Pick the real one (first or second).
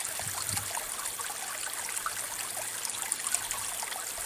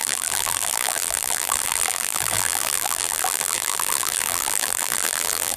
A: first